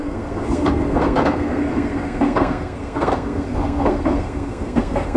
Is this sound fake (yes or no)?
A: yes